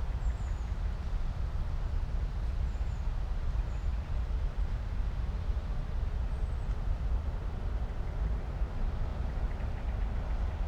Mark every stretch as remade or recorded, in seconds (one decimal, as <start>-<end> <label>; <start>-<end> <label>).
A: 0.0-9.1 recorded; 9.1-9.7 remade; 9.7-10.7 recorded